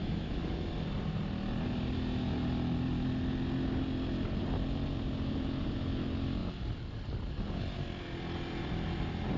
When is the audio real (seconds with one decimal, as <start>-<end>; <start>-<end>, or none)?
0.5-9.4